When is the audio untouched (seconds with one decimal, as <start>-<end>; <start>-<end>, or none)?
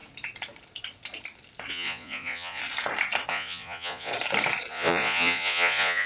0.0-1.7; 2.6-3.3; 4.1-4.7